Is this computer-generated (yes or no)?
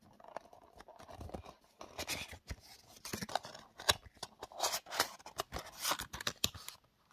no